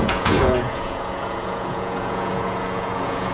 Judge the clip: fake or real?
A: fake